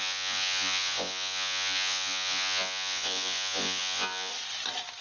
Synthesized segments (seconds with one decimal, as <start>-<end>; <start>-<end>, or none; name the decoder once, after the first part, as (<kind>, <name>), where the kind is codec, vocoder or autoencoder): 0.0-4.3 (vocoder, Vocos)